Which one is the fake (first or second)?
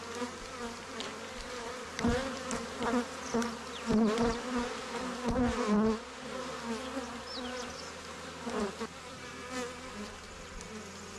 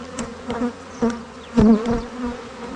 second